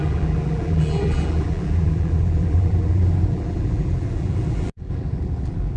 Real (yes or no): no